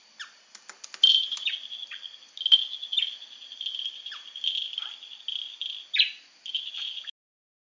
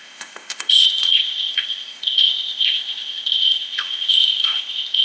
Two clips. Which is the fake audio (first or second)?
second